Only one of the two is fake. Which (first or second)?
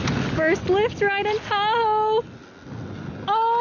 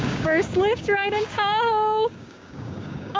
second